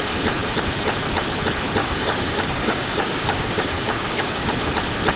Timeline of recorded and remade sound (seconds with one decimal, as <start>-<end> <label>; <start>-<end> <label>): 0.0-1.8 recorded; 1.8-4.5 remade; 4.5-5.2 recorded